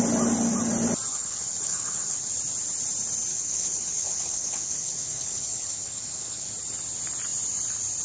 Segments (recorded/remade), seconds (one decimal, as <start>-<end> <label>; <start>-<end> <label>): 0.0-1.1 recorded; 1.1-2.3 remade; 2.3-3.3 recorded; 3.3-6.5 remade; 6.5-8.0 recorded